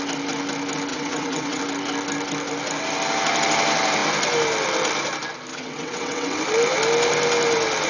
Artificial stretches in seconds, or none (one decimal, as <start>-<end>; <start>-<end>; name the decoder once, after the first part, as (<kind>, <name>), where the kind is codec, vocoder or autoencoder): 0.9-1.6 (vocoder, WaveNeXt); 5.5-6.4